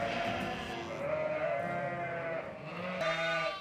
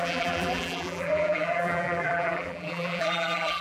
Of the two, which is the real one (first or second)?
first